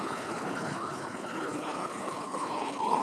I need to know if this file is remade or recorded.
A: remade